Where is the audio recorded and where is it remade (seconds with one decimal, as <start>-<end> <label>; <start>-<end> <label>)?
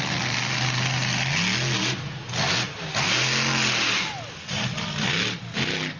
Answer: 0.0-6.0 recorded